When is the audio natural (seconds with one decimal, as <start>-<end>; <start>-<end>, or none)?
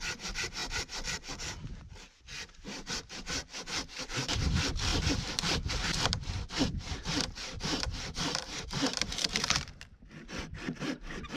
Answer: 4.9-5.7